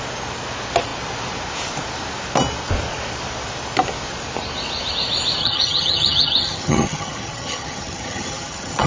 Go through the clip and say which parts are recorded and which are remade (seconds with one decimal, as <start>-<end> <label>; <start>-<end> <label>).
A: 0.0-5.4 recorded; 5.4-8.9 remade